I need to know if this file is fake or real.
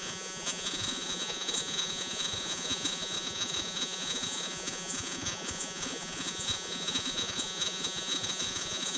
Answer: fake